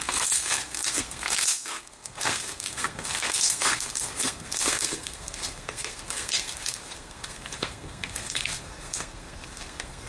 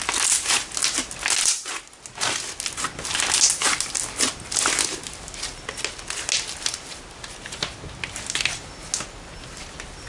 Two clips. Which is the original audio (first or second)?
second